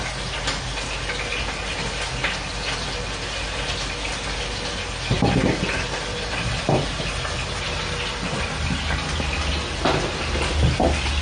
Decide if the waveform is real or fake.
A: real